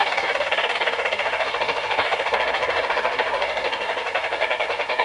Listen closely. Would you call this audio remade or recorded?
remade